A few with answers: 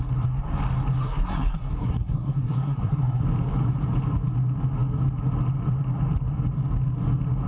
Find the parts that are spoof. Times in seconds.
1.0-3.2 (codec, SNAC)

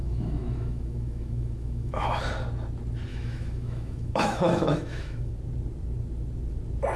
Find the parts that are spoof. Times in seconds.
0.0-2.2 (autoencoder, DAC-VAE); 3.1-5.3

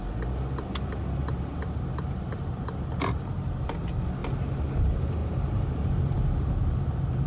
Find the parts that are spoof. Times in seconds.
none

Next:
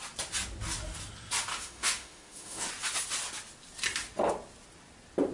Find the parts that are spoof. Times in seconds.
1.5-2.7 (autoencoder, DAC-VAE)

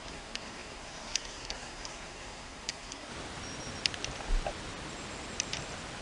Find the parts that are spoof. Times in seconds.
0.0-3.1 (codec, SNAC)

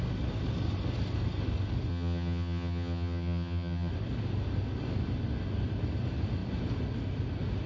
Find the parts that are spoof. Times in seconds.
1.9-3.9 (vocoder, HiFi-GAN)

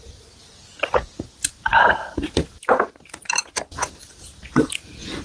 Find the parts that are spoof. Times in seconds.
none

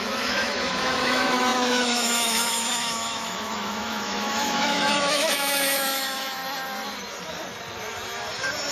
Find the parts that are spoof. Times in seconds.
0.0-6.4 (autoencoder, DAC-VAE)